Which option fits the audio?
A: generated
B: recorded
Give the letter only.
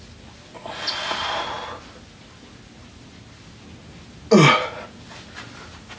B